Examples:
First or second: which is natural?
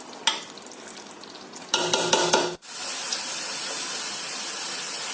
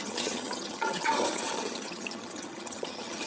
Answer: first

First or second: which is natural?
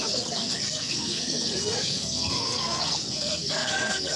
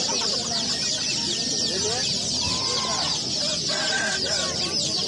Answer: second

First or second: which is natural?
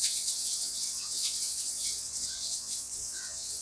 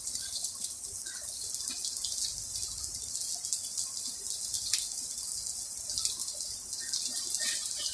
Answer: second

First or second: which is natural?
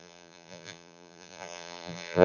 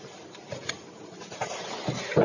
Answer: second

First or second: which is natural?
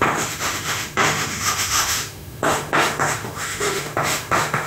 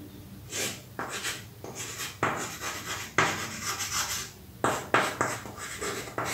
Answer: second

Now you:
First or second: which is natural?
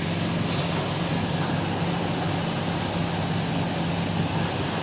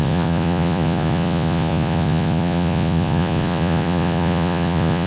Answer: first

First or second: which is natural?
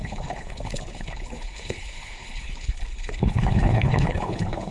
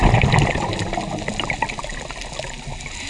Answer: second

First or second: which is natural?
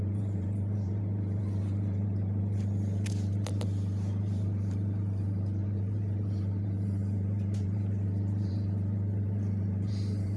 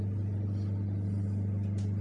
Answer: second